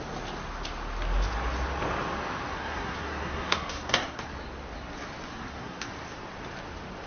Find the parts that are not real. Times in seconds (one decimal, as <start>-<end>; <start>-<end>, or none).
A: 2.5-4.3; 5.3-5.9